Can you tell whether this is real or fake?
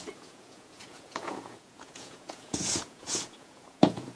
fake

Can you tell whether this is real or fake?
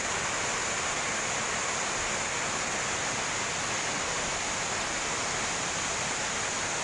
real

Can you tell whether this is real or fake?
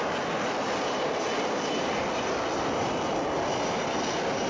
real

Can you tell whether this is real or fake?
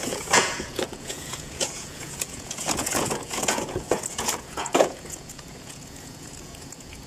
fake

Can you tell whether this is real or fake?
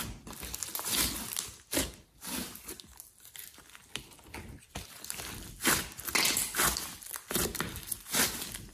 real